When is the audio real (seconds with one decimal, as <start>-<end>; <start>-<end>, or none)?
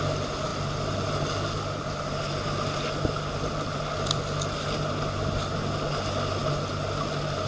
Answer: 0.0-7.5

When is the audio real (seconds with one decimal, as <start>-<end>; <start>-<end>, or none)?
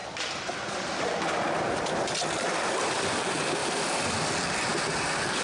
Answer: 3.2-3.6; 4.3-4.7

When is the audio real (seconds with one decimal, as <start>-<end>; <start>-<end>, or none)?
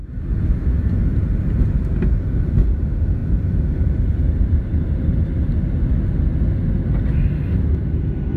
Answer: 0.0-8.4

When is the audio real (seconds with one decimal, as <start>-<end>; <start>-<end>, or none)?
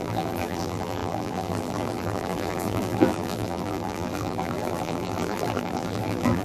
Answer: none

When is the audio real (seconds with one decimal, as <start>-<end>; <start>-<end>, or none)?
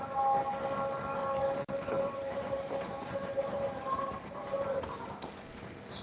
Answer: 0.0-1.2; 4.8-6.0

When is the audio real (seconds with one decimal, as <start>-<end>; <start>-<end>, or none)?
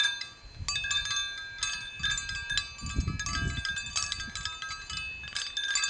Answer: 0.0-5.9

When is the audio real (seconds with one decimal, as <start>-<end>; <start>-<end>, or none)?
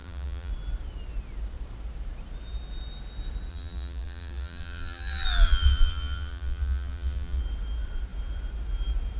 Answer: 0.5-3.5; 7.4-9.2